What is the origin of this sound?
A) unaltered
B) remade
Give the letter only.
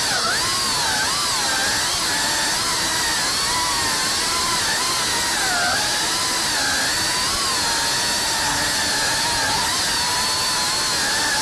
A